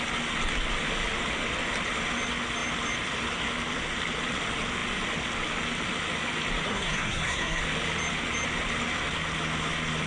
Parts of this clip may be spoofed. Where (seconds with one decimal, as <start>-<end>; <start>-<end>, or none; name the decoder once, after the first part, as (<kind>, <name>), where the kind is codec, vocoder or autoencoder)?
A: 6.7-7.6 (codec, SNAC)